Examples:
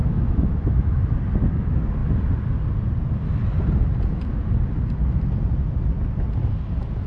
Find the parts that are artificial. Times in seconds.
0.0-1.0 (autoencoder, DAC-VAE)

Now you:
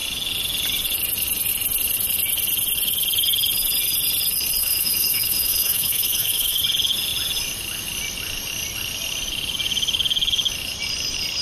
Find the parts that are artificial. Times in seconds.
4.6-6.6 (autoencoder, DAC-VAE)

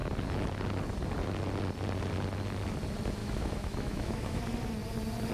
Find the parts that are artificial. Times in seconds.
3.2-4.4 (autoencoder, DAC-VAE)